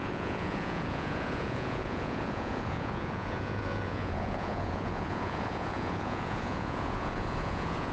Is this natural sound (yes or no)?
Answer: no